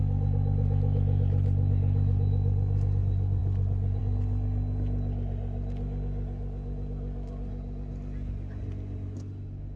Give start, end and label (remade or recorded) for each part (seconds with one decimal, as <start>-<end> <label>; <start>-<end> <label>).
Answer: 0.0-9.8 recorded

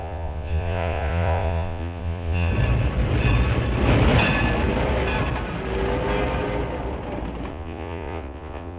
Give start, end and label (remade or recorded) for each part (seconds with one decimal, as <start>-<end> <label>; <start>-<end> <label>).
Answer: 0.0-2.5 remade; 2.5-7.5 recorded; 7.5-8.8 remade

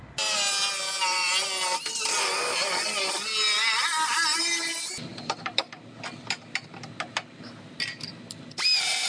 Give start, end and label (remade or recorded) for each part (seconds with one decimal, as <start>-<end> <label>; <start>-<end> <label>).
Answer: 0.0-9.1 recorded